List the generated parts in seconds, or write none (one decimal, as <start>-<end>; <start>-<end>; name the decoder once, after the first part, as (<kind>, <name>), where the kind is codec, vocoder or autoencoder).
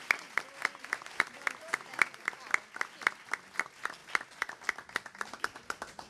none